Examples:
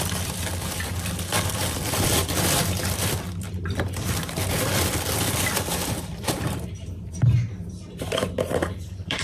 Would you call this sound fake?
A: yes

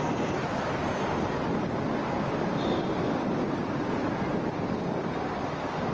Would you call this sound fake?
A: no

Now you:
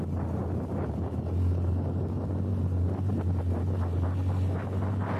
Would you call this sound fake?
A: no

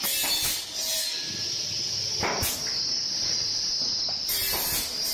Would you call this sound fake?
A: no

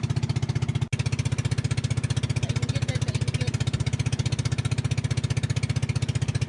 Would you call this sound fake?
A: no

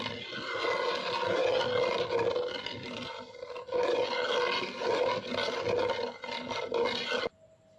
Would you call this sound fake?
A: no